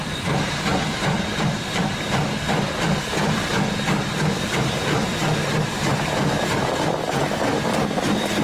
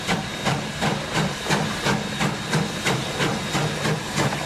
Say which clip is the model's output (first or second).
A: first